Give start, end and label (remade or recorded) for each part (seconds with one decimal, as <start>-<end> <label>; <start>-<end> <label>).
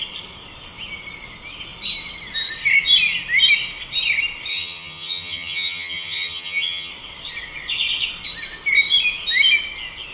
0.0-4.5 recorded; 4.5-6.9 remade; 6.9-10.1 recorded